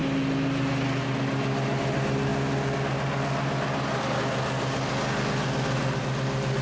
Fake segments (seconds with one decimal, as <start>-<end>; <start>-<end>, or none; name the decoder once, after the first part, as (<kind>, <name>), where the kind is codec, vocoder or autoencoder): none